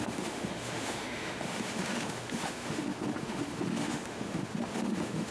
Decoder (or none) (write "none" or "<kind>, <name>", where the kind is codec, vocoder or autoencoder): autoencoder, DAC-VAE